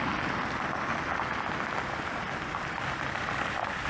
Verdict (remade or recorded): recorded